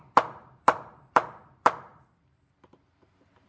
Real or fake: fake